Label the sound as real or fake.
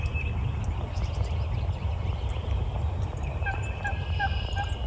real